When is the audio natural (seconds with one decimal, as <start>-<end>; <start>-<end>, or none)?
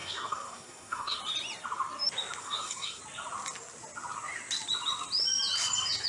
1.2-2.4; 3.0-6.1